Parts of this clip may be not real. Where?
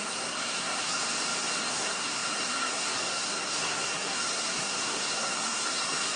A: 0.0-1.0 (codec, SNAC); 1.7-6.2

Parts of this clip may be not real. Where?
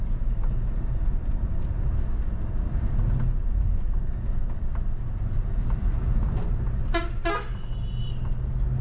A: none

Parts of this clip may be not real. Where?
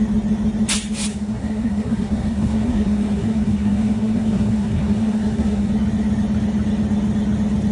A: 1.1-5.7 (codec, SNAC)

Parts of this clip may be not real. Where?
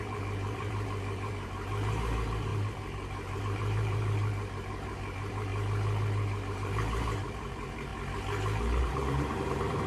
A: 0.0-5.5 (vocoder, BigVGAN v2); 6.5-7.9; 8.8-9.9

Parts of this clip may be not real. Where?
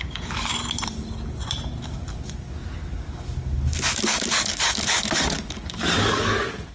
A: 0.0-0.5 (codec, DAC); 1.8-6.7